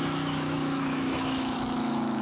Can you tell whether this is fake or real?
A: fake